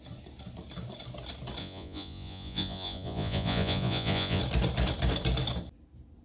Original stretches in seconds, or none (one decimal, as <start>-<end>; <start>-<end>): 0.0-1.6; 4.4-6.2